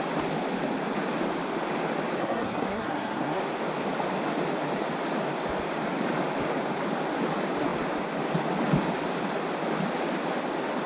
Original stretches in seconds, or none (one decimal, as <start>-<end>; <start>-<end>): 0.0-2.2; 3.4-10.9